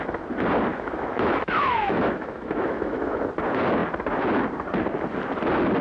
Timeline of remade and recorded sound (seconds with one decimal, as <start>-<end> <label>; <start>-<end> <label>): 0.0-0.7 recorded; 0.7-3.2 remade; 3.2-5.8 recorded